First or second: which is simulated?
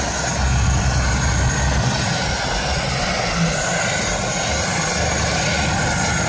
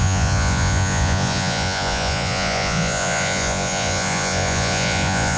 second